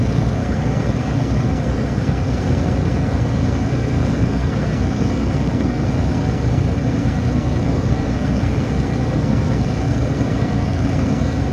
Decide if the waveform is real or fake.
fake